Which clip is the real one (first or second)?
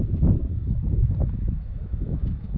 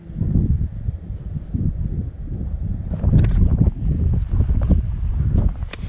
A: second